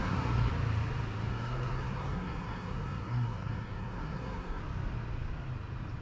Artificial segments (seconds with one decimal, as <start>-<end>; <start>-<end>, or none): 0.0-0.5; 1.3-4.6